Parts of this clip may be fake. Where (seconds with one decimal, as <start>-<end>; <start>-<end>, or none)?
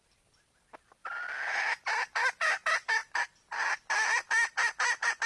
0.0-3.0; 3.7-5.3